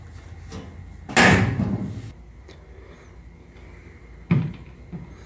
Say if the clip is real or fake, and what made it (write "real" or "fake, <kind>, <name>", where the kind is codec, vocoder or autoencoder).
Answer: real